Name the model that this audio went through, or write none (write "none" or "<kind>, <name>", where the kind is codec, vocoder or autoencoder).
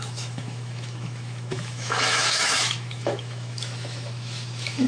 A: autoencoder, DAC-VAE